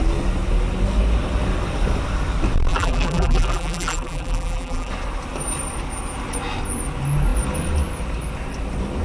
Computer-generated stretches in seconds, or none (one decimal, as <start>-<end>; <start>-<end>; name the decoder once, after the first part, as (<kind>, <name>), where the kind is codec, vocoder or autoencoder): 2.7-4.9 (vocoder, BigVGAN v2)